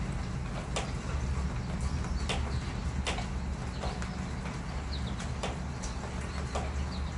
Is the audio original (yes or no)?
yes